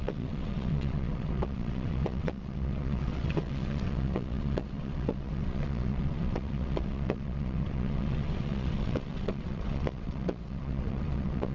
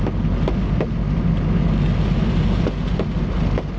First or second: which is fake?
first